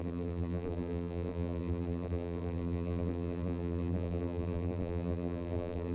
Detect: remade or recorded remade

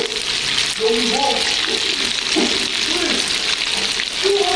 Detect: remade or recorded recorded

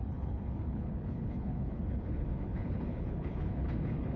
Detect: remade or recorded remade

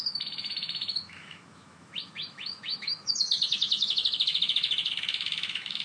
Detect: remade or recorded remade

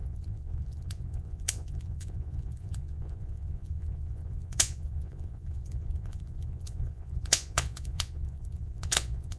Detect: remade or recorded remade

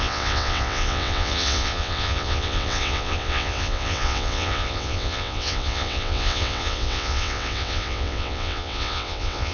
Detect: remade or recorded remade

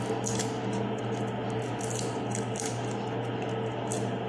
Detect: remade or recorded recorded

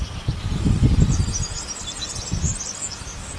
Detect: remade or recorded recorded